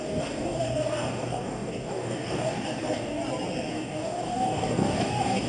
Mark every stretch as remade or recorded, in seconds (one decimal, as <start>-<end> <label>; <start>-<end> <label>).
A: 0.0-3.2 remade; 3.2-3.7 recorded; 3.7-5.5 remade